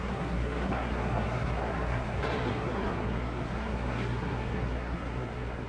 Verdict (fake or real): fake